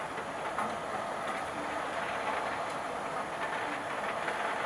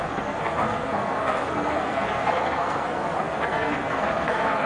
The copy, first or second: second